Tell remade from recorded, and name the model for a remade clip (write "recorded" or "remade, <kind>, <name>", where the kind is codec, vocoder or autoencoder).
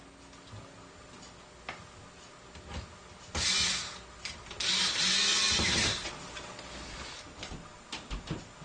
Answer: recorded